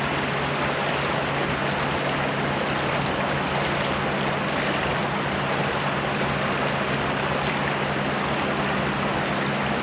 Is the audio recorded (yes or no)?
yes